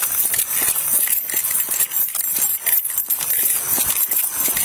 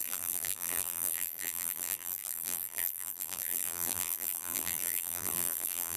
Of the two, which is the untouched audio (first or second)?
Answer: first